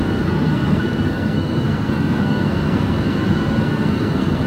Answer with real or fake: fake